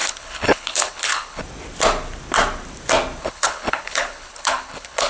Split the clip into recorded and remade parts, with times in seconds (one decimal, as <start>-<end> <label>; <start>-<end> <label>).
0.0-1.4 remade; 1.4-3.2 recorded; 3.2-5.1 remade